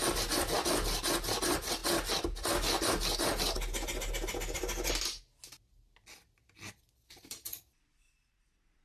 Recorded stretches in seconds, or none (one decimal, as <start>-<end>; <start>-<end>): 0.0-8.8